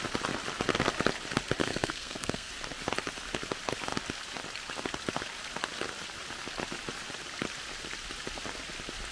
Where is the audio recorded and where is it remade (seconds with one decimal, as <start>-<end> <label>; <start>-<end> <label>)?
0.0-1.6 recorded; 1.6-2.5 remade; 2.5-9.1 recorded